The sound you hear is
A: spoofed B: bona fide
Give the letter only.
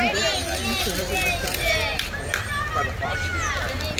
B